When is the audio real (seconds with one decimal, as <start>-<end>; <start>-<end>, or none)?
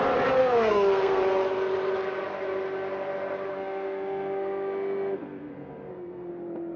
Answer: 0.0-0.4; 1.2-3.5; 6.3-6.8